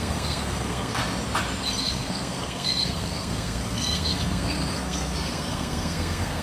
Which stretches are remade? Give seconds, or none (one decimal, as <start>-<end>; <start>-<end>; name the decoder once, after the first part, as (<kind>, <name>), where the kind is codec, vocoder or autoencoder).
0.0-1.0 (codec, SNAC); 1.8-6.4